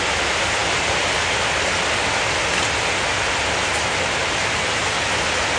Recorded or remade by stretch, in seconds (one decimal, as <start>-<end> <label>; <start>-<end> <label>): 0.0-5.6 recorded